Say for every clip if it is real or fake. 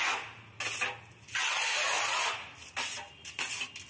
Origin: real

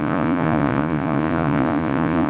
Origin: fake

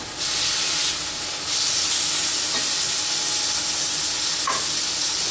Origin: real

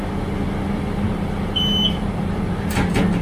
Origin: real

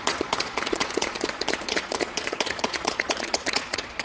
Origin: fake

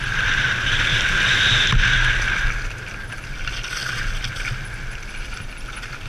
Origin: real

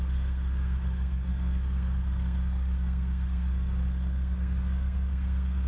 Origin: fake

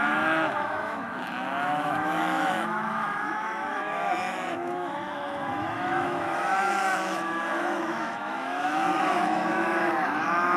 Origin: fake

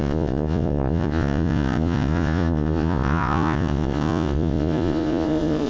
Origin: fake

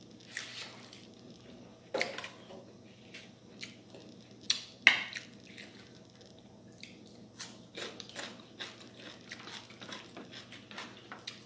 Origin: real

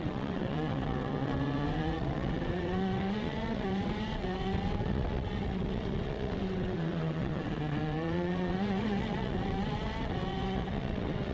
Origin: fake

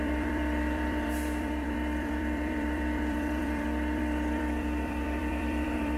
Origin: fake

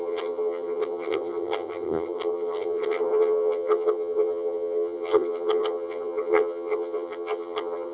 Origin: fake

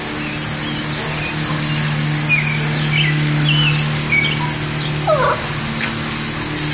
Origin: real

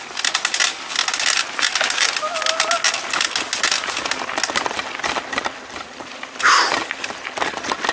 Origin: real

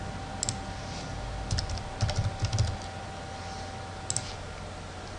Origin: real